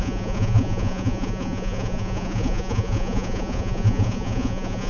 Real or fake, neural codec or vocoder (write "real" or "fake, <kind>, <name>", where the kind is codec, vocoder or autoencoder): fake, vocoder, Vocos